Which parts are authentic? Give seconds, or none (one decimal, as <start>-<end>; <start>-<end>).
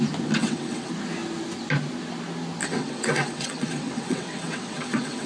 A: 0.0-0.4; 0.9-2.6